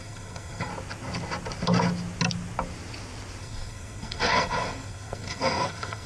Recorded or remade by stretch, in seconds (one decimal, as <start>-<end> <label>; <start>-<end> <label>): 0.0-0.7 remade; 0.7-3.4 recorded; 3.4-6.1 remade